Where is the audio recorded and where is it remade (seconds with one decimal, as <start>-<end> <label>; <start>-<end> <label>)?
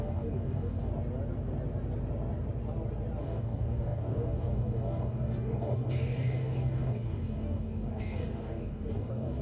0.0-0.9 remade; 0.9-3.2 recorded; 3.2-9.4 remade